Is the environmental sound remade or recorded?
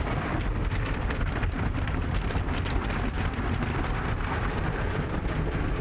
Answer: remade